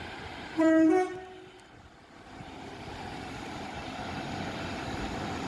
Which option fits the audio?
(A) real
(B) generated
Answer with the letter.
B